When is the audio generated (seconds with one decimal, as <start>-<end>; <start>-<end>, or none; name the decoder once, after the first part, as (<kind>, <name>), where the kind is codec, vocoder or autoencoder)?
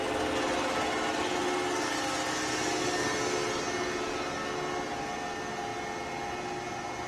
none